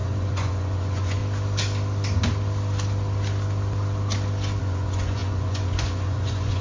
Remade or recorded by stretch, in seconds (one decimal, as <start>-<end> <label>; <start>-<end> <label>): 0.0-1.2 remade; 1.2-4.6 recorded; 4.6-6.6 remade